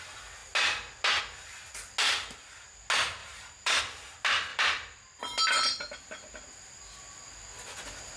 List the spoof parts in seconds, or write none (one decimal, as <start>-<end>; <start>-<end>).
3.2-3.8; 4.5-5.2